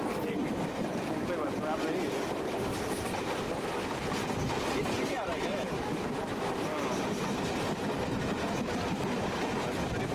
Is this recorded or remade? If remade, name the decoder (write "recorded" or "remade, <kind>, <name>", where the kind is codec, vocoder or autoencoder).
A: recorded